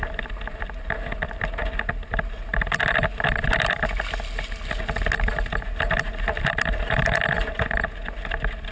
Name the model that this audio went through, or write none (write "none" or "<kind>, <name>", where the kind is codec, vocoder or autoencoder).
none